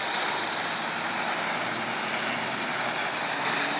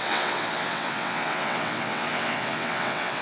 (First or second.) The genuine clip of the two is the first